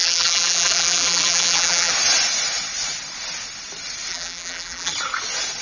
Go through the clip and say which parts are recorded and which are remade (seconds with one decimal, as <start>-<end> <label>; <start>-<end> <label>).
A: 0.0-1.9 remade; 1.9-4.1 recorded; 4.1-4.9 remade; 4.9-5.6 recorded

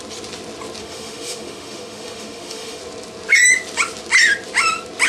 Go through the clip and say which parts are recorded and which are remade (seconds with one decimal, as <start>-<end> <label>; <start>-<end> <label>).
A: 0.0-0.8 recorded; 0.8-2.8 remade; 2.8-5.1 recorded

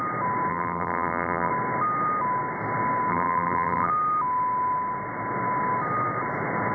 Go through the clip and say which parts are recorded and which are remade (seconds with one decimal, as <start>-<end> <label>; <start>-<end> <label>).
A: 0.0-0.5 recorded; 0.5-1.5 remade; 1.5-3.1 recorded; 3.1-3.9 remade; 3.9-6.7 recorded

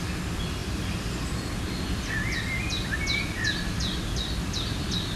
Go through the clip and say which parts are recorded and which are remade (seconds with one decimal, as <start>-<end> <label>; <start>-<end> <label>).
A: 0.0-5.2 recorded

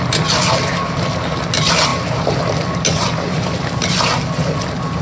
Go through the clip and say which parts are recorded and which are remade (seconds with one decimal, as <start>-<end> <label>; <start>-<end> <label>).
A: 0.0-5.0 recorded